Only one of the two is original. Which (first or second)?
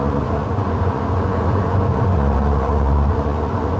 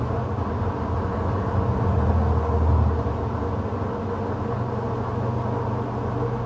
second